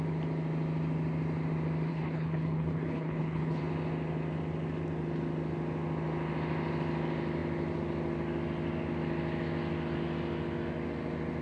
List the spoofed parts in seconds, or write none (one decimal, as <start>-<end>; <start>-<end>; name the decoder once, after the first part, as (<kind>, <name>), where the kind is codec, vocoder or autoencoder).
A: 1.9-3.6 (codec, HILCodec)